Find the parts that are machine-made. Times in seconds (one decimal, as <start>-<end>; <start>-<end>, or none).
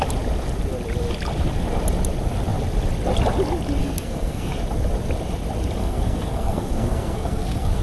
3.8-4.5; 5.8-7.8